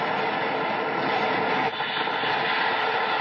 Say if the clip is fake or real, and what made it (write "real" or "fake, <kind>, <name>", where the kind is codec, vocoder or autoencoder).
real